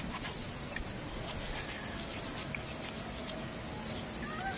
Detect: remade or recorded recorded